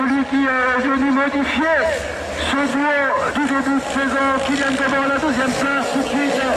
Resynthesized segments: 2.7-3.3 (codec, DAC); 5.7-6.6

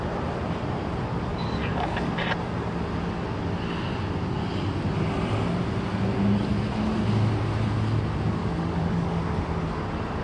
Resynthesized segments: 1.3-2.1 (codec, DAC); 8.4-9.2

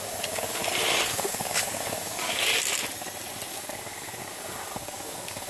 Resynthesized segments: 0.0-0.6 (codec, DAC); 1.1-2.5; 3.5-5.5

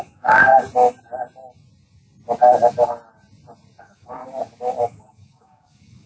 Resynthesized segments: 0.0-0.5 (codec, DAC); 3.8-4.2; 4.8-6.1

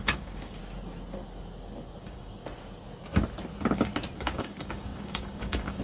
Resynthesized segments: 0.0-0.6 (codec, DAC); 2.0-2.4; 4.2-5.8